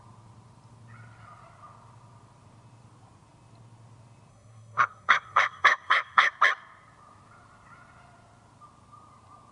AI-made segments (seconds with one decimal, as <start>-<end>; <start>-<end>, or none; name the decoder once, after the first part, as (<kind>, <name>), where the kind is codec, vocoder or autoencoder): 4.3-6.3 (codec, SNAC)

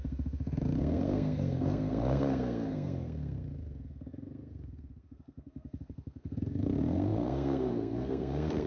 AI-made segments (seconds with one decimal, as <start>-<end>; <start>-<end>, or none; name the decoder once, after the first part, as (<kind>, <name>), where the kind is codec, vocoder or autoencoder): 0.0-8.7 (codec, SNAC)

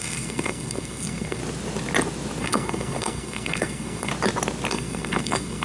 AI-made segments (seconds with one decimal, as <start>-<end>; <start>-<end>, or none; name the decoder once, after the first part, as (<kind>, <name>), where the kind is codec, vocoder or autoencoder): 0.0-1.4 (codec, SNAC); 2.4-4.1; 4.7-5.6

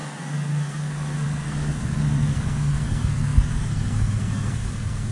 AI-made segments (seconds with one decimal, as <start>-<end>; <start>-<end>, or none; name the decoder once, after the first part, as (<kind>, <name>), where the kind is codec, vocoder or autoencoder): 0.0-5.1 (codec, SNAC)

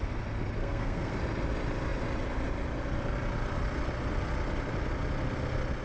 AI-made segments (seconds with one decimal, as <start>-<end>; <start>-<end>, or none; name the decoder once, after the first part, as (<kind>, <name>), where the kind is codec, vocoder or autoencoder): 0.6-1.1 (codec, SNAC)